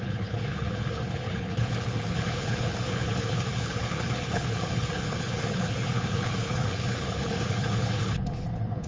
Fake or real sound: fake